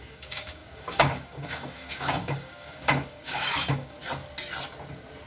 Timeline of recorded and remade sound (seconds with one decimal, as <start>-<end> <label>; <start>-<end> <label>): 0.0-4.0 remade; 4.0-5.3 recorded